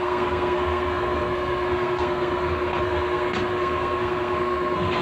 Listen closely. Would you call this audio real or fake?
fake